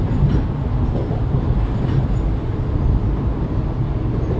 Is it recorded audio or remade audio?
recorded